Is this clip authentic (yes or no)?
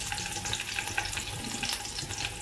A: yes